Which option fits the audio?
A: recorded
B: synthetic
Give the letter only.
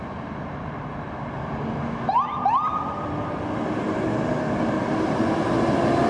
A